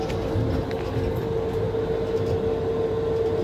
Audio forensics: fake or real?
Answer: real